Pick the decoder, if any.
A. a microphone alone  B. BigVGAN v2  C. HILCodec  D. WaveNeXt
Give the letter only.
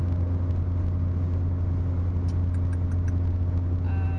A